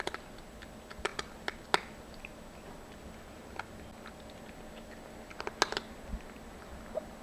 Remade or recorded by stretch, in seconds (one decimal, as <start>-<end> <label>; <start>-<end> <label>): 0.0-7.2 recorded